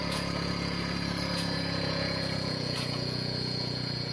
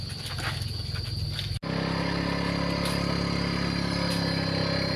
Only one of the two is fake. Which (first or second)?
first